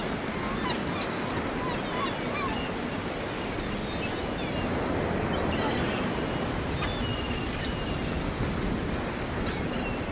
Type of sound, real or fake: real